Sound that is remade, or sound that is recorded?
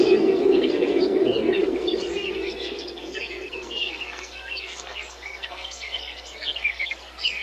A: remade